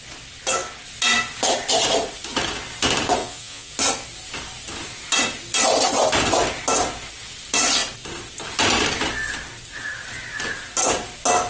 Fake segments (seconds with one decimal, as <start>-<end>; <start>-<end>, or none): 3.2-3.7

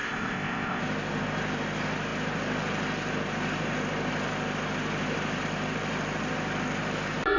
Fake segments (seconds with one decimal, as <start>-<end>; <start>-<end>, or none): 0.0-0.8